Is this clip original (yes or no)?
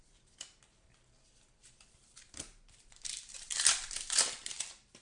yes